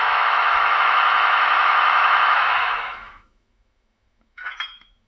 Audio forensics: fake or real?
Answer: fake